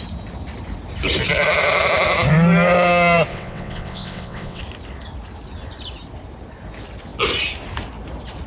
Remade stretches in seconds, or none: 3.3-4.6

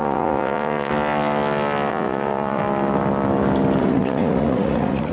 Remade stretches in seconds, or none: 0.0-0.9; 1.9-2.6; 3.8-5.1

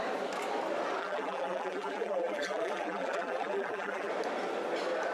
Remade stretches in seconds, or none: 1.0-4.1

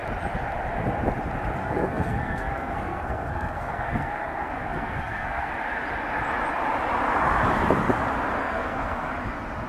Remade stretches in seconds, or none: 1.6-5.5; 8.4-9.1

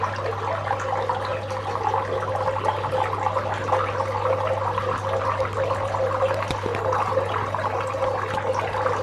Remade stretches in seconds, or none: none

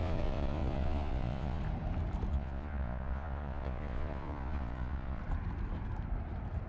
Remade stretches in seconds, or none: 0.0-1.6; 2.3-5.2

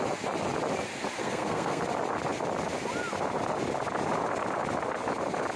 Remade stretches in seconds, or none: 1.2-1.8